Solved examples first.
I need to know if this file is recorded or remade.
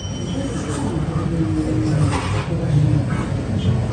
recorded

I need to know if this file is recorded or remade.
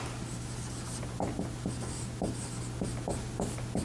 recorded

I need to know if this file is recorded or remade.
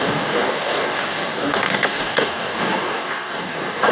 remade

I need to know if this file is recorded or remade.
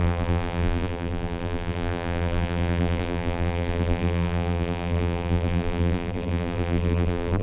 remade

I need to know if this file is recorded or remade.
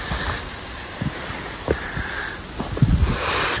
remade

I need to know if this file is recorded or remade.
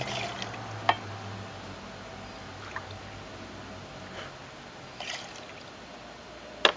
recorded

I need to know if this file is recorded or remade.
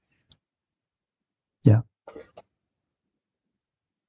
recorded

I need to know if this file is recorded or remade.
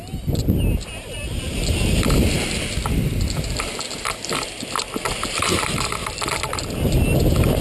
recorded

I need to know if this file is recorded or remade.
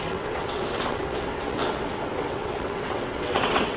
remade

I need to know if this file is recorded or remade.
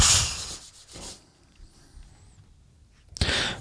recorded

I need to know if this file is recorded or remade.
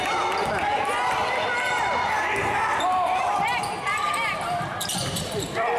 remade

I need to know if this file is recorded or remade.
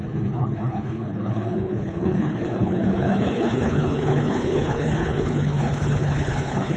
remade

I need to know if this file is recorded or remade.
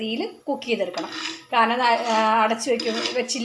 recorded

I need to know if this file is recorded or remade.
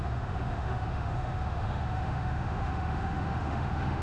remade